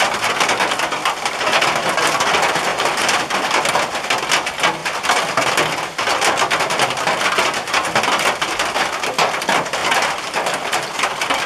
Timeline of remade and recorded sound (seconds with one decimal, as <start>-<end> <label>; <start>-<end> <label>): 0.0-2.7 recorded; 2.7-3.3 remade; 3.3-9.8 recorded; 9.8-10.6 remade; 10.6-11.5 recorded